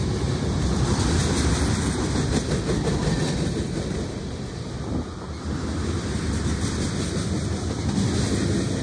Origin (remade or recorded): recorded